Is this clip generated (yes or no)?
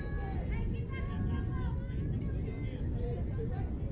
no